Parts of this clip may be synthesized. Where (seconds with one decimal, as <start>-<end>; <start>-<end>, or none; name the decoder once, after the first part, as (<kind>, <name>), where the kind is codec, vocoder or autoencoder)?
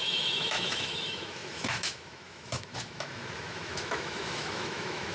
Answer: 0.0-5.1 (autoencoder, DAC-VAE)